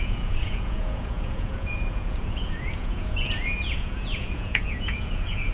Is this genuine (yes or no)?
no